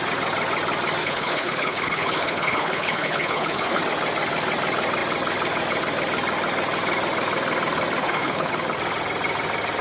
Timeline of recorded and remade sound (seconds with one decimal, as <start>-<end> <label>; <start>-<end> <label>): 0.0-1.0 recorded; 1.0-3.8 remade; 3.8-8.0 recorded; 8.0-8.5 remade; 8.5-9.8 recorded